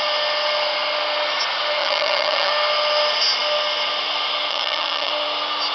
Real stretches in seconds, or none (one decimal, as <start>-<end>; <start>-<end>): 0.0-1.8; 2.5-4.5; 5.1-5.7